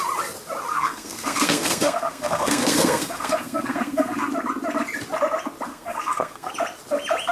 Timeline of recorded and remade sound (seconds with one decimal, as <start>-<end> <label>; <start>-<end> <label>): 0.0-0.7 recorded; 0.7-4.3 remade; 4.3-5.7 recorded; 5.7-6.5 remade; 6.5-7.3 recorded